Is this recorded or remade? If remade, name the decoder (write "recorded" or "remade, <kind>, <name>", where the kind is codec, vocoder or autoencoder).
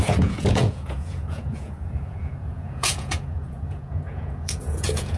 remade, vocoder, Vocos